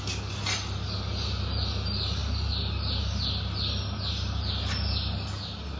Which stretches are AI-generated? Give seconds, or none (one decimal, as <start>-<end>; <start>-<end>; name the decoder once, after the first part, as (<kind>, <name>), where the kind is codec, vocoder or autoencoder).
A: none